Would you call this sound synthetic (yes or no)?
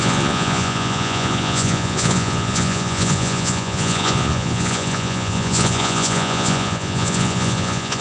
yes